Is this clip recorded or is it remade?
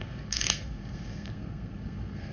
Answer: remade